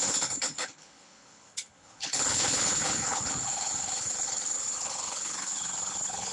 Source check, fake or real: fake